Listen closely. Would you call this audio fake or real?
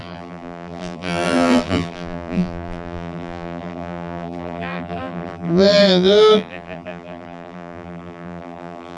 fake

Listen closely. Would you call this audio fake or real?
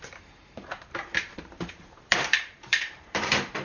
fake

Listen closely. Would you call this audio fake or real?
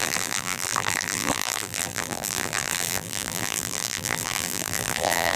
fake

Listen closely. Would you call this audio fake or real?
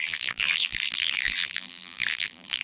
fake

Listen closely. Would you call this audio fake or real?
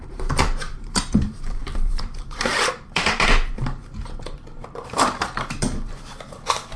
fake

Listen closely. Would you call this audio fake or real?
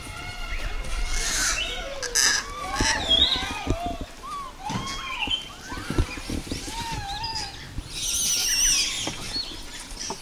real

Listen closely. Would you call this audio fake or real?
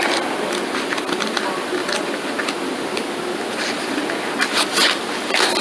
real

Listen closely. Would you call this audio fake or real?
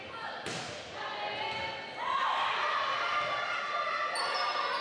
real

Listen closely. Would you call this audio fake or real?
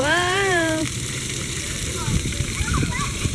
fake